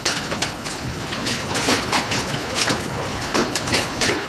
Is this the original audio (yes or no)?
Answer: no